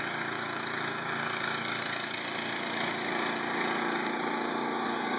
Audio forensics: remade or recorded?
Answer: remade